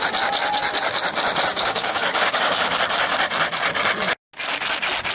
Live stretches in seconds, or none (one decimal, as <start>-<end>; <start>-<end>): 0.0-1.5; 2.8-5.1